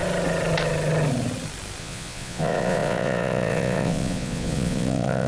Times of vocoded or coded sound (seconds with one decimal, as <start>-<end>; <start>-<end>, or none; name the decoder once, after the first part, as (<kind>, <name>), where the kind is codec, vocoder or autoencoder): 1.8-5.3 (vocoder, Vocos)

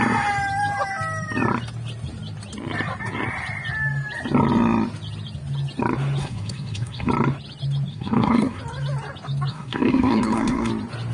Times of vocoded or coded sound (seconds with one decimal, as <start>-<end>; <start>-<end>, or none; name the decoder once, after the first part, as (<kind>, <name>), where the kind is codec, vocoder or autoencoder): 6.2-7.1 (codec, SNAC); 7.9-8.6; 9.5-10.7

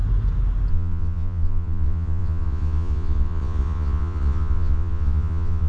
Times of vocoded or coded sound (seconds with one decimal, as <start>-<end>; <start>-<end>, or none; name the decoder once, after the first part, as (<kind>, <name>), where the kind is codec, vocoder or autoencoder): 0.7-5.7 (vocoder, Vocos)

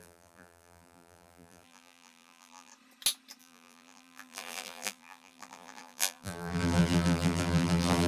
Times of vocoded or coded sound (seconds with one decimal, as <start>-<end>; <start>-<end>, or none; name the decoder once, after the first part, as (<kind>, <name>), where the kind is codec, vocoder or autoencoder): 0.0-2.7 (vocoder, BigVGAN v2); 3.4-8.1

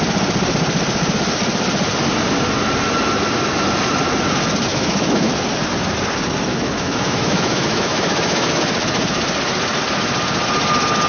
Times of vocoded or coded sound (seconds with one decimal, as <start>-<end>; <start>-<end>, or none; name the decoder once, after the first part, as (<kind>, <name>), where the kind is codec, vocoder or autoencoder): 4.7-5.3 (autoencoder, DAC-VAE); 6.5-8.6

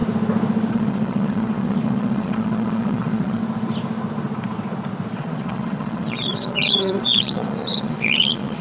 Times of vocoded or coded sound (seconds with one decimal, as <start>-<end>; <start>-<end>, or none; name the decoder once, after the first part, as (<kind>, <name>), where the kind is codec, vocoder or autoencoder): 0.7-3.4 (vocoder, Vocos); 5.2-8.6

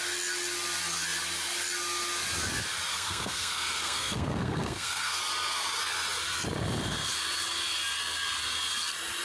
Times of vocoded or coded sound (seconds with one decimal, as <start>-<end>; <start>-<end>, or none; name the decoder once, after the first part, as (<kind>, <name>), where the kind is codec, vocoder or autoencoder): 2.9-5.2 (codec, SNAC)

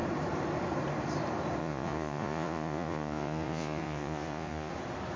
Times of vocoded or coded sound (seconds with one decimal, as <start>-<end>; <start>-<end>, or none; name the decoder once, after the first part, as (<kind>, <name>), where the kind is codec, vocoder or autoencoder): 1.6-4.7 (vocoder, Vocos)